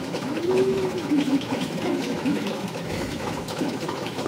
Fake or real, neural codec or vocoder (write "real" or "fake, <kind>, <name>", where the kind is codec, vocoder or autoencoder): fake, autoencoder, DAC-VAE